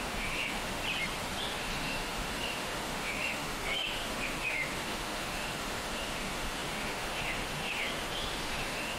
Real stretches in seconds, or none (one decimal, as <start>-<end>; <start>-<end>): 0.8-1.4